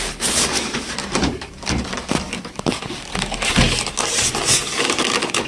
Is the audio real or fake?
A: fake